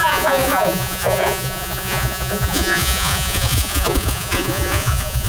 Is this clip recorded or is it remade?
remade